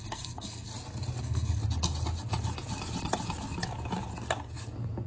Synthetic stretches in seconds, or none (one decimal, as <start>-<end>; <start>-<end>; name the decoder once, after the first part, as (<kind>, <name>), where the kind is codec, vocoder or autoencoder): 0.0-0.7 (codec, SNAC); 1.2-1.6

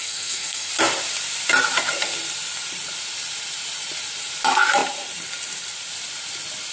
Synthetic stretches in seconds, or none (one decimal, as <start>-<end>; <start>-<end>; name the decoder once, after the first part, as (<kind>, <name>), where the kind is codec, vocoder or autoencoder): 0.0-0.7 (codec, SNAC)

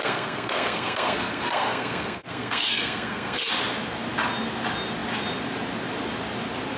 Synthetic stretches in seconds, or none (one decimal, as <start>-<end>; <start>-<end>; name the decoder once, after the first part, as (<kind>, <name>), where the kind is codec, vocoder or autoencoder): 0.0-3.5 (codec, SNAC)

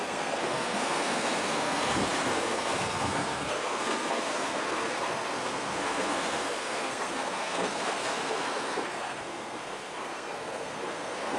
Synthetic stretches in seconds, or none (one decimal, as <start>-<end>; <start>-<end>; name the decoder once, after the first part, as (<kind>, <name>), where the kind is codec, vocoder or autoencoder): 0.0-11.4 (codec, SNAC)

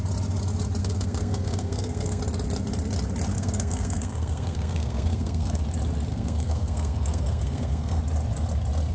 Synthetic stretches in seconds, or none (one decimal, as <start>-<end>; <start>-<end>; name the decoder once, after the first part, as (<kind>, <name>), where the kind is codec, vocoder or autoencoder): 0.8-2.2 (codec, SNAC); 3.3-5.6; 6.1-8.0

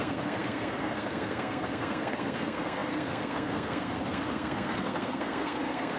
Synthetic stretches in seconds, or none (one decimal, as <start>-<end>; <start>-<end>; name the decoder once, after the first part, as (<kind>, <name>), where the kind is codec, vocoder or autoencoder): 0.0-6.0 (codec, SNAC)